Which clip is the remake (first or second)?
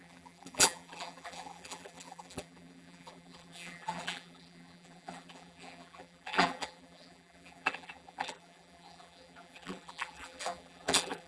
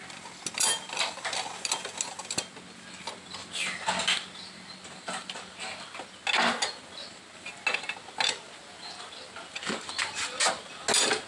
first